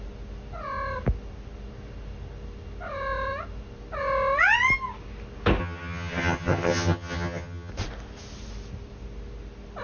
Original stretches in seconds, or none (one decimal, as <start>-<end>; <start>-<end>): 0.0-5.6; 7.7-9.8